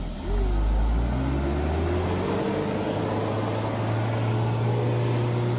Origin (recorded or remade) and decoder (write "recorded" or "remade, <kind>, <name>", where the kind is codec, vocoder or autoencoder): recorded